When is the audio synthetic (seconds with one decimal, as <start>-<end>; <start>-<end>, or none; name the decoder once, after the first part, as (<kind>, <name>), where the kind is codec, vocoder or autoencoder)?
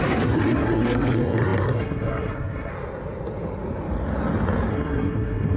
0.0-2.7 (codec, SNAC); 4.7-5.6